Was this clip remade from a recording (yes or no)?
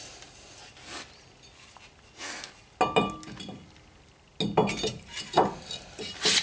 no